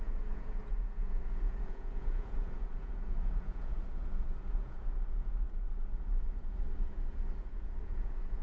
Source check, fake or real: fake